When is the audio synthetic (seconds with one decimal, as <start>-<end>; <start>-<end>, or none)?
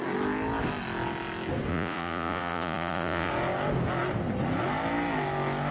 1.7-3.3